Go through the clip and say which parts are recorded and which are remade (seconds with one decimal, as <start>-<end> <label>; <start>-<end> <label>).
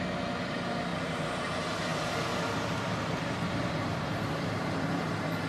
0.0-1.9 recorded; 1.9-5.5 remade